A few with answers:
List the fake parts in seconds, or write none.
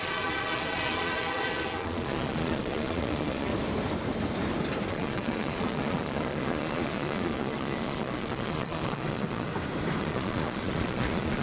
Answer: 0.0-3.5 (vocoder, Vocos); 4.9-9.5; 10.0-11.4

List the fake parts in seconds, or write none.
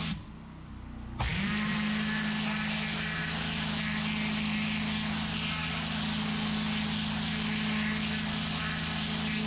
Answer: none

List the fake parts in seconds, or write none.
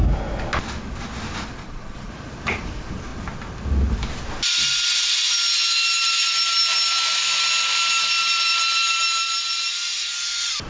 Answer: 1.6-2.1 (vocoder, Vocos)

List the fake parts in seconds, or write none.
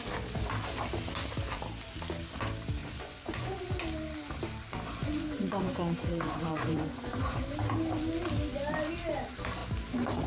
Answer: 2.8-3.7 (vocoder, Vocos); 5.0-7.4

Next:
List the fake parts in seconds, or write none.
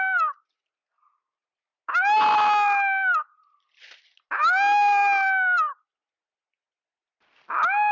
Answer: none